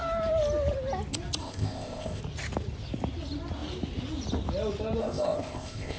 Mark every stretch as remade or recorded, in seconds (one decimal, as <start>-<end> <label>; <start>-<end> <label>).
0.0-1.4 recorded; 1.4-2.2 remade; 2.2-5.0 recorded; 5.0-6.0 remade